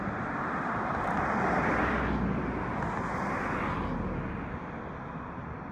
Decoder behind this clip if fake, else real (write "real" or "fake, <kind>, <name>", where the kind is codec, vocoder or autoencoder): real